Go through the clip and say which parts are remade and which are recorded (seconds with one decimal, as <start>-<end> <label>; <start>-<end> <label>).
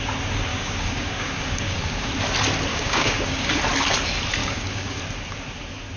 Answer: 0.0-0.5 recorded; 0.5-2.1 remade; 2.1-2.7 recorded; 2.7-3.6 remade; 3.6-4.4 recorded; 4.4-5.0 remade; 5.0-6.0 recorded